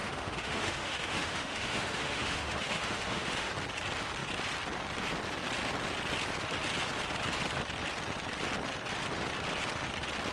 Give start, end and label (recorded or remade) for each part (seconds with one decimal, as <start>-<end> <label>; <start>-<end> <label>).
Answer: 0.0-3.5 remade; 3.5-10.3 recorded